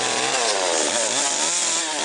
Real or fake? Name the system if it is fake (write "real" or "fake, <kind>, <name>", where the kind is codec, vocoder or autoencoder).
real